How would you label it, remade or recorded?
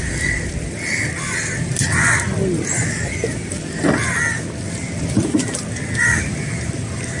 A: recorded